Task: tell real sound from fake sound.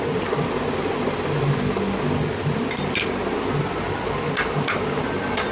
real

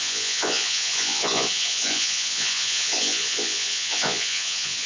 fake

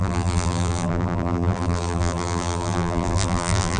fake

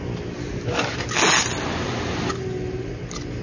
real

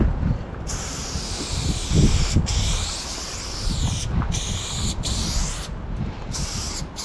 real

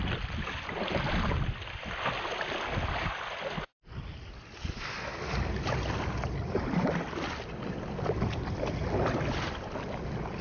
real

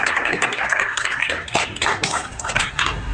fake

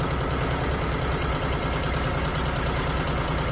real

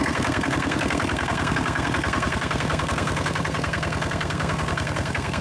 fake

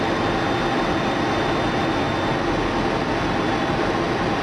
real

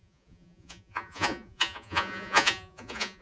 fake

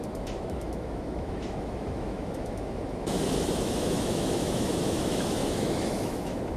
fake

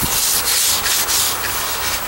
real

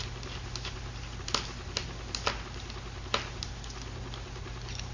real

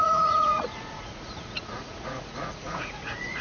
fake